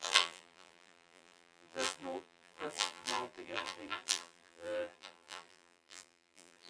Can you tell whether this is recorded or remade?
remade